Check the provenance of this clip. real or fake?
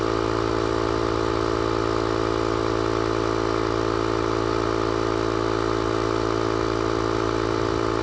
real